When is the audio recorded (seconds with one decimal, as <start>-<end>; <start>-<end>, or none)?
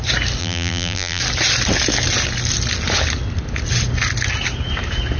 0.0-0.4; 1.2-5.2